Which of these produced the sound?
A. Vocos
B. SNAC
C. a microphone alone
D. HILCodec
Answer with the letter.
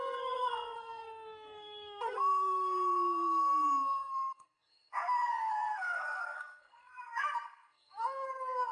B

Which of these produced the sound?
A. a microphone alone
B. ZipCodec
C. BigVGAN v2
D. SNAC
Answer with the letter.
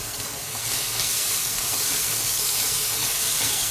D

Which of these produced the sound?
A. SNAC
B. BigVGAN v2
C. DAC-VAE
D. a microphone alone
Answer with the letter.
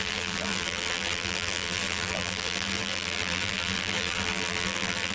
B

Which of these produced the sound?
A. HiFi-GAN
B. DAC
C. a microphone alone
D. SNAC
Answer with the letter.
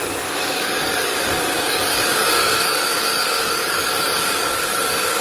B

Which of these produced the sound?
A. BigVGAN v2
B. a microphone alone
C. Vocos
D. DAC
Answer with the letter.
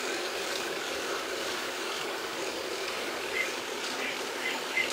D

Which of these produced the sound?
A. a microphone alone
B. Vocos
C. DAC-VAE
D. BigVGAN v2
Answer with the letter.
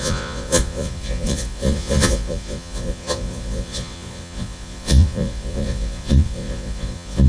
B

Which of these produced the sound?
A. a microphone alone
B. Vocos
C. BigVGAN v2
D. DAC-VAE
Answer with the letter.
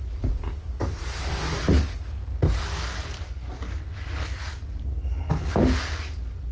A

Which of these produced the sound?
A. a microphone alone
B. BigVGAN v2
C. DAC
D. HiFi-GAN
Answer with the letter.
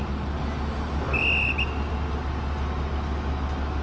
A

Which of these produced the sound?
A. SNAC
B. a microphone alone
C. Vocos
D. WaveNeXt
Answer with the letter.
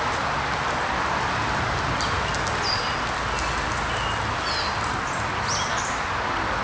B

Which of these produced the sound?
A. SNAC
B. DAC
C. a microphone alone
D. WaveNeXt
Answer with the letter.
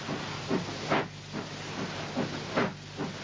C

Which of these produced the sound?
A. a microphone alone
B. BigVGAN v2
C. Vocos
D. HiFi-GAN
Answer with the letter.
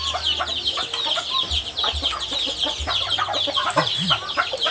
A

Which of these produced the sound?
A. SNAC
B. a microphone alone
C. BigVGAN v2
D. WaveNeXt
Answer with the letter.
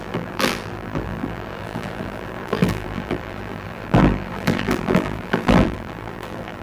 C